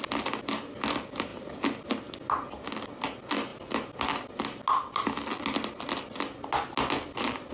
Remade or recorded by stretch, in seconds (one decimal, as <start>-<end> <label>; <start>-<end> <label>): 0.0-7.5 recorded